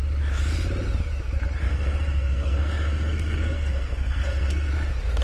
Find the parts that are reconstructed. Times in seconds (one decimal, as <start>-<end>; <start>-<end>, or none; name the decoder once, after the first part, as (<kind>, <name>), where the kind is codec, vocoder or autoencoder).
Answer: 1.6-4.7 (codec, SNAC)